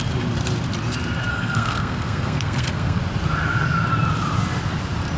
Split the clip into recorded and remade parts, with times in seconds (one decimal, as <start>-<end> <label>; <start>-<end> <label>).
0.0-1.3 recorded; 1.3-3.0 remade; 3.0-5.2 recorded